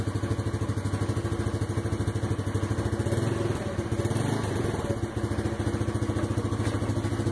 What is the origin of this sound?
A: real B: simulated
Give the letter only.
A